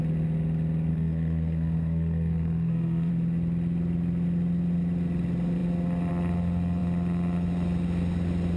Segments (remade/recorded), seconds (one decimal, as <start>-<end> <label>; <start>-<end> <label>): 0.0-0.9 recorded; 0.9-3.1 remade; 3.1-8.6 recorded